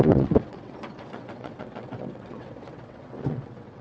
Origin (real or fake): fake